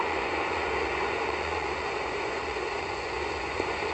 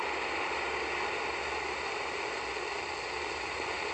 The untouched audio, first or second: second